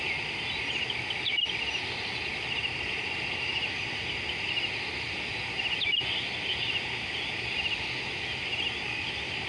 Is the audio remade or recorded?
recorded